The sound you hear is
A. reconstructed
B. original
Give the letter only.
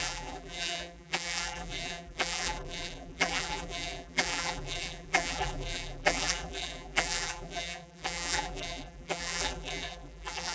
A